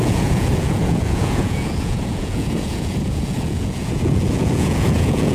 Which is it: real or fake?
fake